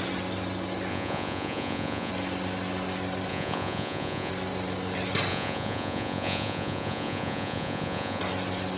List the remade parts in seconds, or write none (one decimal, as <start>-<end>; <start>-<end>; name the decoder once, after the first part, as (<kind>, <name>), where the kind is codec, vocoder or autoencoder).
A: 0.9-2.1 (vocoder, Vocos); 3.3-4.3; 5.3-8.2